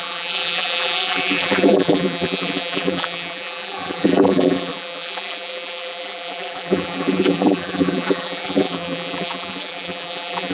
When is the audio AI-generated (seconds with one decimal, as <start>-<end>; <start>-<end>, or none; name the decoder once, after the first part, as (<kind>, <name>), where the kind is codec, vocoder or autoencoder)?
0.0-10.5 (vocoder, BigVGAN v2)